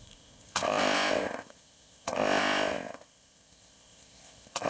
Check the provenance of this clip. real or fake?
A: fake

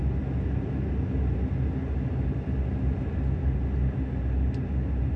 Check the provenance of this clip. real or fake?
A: real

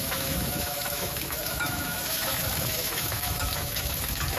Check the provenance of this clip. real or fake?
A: fake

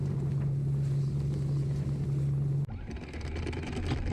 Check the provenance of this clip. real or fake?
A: real